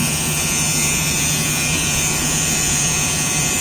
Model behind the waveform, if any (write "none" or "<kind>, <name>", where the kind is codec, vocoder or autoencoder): vocoder, Vocos